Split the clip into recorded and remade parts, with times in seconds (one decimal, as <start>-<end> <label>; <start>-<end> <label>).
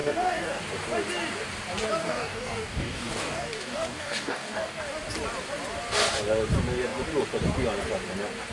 0.0-0.6 remade; 0.6-2.0 recorded; 2.0-4.8 remade; 4.8-8.5 recorded